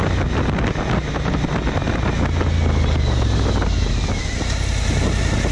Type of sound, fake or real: real